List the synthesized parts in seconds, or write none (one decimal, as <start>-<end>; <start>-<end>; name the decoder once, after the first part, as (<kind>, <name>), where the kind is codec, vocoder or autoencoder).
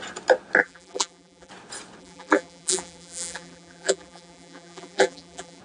0.6-1.5 (vocoder, BigVGAN v2); 2.0-5.6